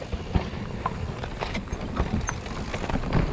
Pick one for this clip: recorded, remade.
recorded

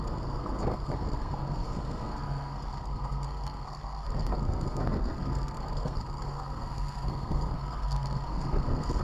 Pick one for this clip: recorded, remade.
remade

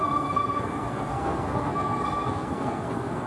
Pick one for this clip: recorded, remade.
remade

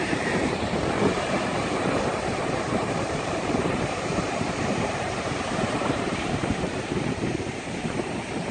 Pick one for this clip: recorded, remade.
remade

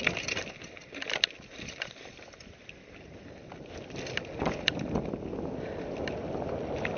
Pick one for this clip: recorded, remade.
recorded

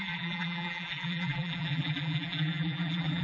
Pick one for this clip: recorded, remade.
remade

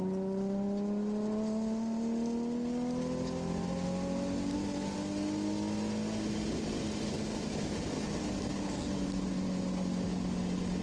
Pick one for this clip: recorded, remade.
recorded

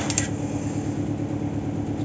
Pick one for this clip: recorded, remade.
recorded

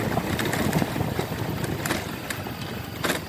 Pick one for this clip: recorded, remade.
recorded